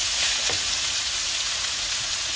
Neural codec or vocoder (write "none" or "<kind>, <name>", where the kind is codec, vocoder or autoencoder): vocoder, Vocos